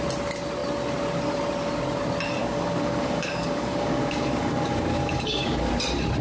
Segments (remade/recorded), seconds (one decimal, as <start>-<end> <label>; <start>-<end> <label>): 0.0-2.4 recorded; 2.4-5.7 remade; 5.7-6.2 recorded